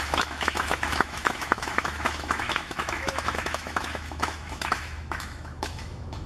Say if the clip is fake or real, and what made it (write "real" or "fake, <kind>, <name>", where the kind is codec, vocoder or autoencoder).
fake, autoencoder, DAC-VAE